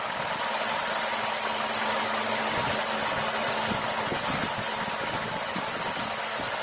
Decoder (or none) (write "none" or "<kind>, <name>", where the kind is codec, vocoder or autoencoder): none